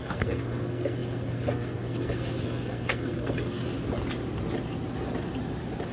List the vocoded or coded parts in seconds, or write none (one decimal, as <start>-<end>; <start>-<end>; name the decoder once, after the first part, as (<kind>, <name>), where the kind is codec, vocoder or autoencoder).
0.0-3.6 (codec, SNAC)